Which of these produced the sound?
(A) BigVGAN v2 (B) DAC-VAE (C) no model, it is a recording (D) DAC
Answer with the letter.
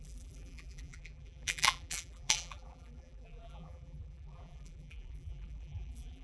A